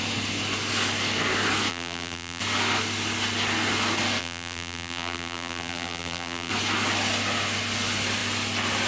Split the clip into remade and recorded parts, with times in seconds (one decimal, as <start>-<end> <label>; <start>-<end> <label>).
0.0-1.7 recorded; 1.7-2.4 remade; 2.4-4.2 recorded; 4.2-6.5 remade; 6.5-8.9 recorded

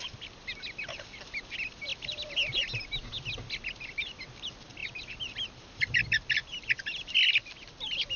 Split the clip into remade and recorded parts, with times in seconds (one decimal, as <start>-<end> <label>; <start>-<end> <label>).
0.0-1.9 recorded; 1.9-2.6 remade; 2.6-4.8 recorded; 4.8-5.6 remade; 5.6-8.2 recorded

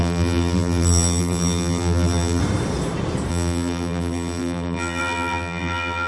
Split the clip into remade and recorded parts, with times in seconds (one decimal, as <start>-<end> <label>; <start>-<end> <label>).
0.0-2.4 remade; 2.4-3.3 recorded; 3.3-6.1 remade

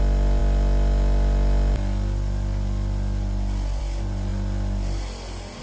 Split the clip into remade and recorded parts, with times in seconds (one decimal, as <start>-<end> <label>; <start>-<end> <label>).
0.0-5.6 recorded

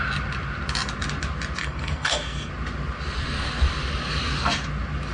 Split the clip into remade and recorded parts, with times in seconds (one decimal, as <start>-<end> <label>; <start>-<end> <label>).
0.0-1.6 recorded; 1.6-2.5 remade; 2.5-5.1 recorded